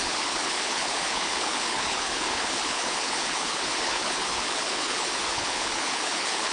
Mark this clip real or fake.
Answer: fake